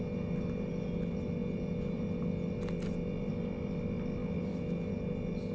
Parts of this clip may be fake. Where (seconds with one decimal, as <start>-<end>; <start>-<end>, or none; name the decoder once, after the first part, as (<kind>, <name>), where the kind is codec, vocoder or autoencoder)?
4.2-4.9 (autoencoder, DAC-VAE)

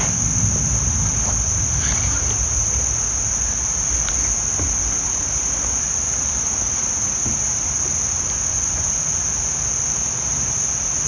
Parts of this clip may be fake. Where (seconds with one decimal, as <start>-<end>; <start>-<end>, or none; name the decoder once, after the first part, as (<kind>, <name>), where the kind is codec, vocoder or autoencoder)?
none

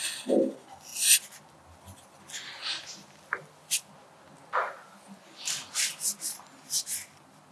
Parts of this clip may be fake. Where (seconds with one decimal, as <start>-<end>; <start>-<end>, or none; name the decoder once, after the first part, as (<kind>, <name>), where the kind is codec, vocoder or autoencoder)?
none

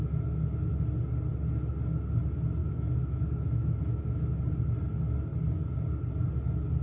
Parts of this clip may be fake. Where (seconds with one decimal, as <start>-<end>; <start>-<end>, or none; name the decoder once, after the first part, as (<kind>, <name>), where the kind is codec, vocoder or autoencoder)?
2.6-4.4 (autoencoder, DAC-VAE)

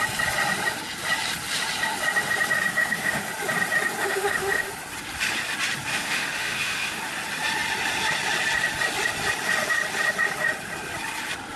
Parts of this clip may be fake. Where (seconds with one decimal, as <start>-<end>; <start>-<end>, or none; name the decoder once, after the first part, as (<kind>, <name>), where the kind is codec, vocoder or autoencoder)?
2.7-3.2 (autoencoder, DAC-VAE); 4.0-4.7; 5.9-7.0